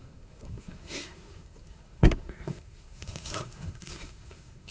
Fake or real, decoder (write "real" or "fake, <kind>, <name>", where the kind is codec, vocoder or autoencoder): fake, codec, SNAC